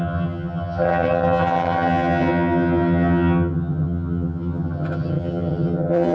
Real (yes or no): no